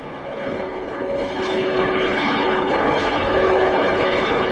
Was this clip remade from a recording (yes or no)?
yes